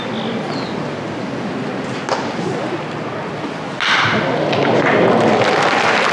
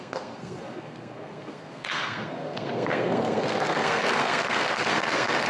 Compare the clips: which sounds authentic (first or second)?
first